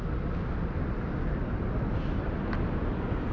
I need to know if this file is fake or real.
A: real